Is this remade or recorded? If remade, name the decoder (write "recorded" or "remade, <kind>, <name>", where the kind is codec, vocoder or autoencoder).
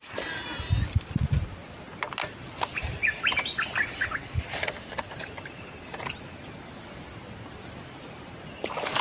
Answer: recorded